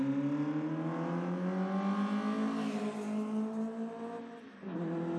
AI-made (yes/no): no